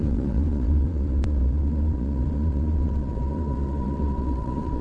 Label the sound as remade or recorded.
remade